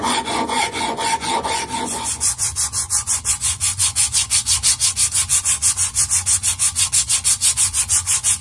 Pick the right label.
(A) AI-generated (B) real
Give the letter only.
A